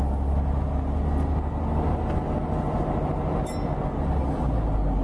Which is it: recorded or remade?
recorded